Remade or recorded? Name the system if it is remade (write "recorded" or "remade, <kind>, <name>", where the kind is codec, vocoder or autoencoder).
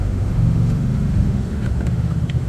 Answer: remade, autoencoder, DAC-VAE